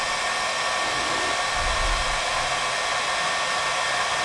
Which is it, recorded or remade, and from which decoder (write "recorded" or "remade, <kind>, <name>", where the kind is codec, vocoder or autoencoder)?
recorded